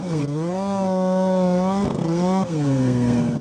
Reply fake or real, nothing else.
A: fake